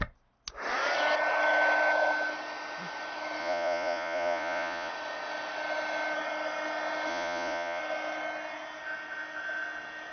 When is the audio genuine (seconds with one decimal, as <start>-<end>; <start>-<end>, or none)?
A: 0.0-3.4; 4.9-7.1; 7.8-10.1